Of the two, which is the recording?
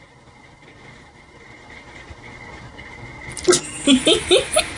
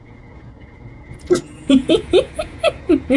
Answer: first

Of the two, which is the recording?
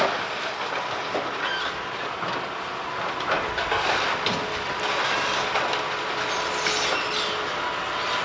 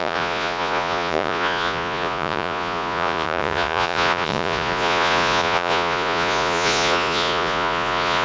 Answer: first